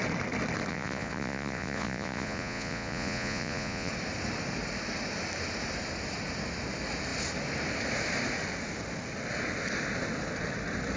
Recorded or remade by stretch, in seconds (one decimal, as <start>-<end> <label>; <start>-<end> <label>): 0.0-0.7 recorded; 0.7-3.9 remade; 3.9-11.0 recorded